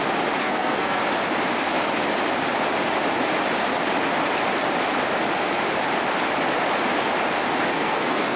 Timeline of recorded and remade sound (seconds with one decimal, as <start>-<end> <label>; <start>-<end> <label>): 0.0-0.4 recorded; 0.4-1.0 remade; 1.0-7.7 recorded; 7.7-8.4 remade